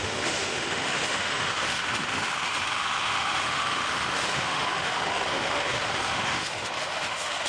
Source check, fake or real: fake